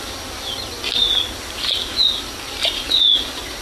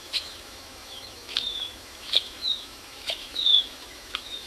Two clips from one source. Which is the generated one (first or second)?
second